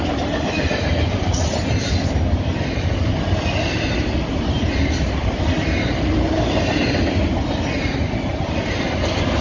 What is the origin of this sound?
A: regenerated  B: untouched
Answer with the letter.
B